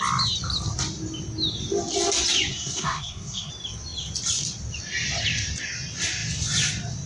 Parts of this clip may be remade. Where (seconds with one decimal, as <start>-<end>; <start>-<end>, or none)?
2.5-3.5